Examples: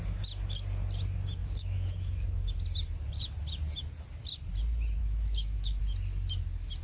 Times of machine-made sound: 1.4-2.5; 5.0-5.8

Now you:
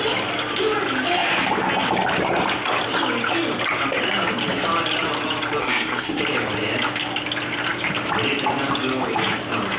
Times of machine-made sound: 5.6-6.2

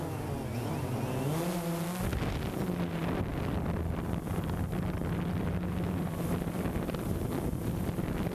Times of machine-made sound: none